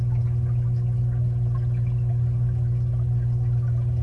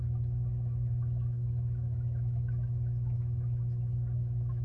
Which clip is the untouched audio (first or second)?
first